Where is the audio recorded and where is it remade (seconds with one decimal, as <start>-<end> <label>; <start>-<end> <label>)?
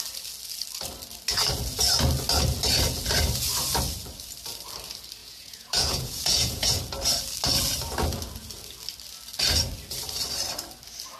0.0-5.2 recorded; 5.2-6.8 remade; 6.8-11.2 recorded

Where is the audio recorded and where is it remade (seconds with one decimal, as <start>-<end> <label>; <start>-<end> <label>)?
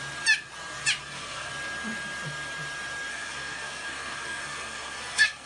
0.0-1.0 recorded; 1.0-1.5 remade; 1.5-3.1 recorded; 3.1-5.5 remade